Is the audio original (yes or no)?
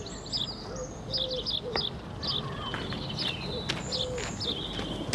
yes